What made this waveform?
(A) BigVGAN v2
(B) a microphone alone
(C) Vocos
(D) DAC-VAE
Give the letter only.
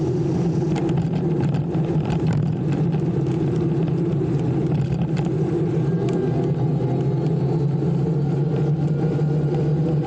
B